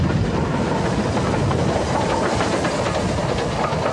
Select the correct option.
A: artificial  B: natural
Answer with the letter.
B